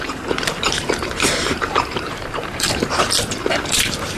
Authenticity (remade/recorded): remade